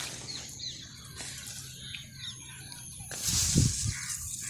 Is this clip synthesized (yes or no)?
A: no